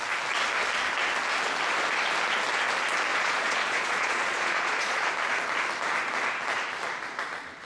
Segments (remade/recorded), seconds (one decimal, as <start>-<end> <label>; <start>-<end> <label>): 0.0-3.1 recorded; 3.1-5.1 remade; 5.1-7.6 recorded